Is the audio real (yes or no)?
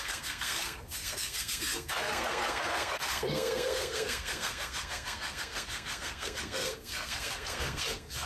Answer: no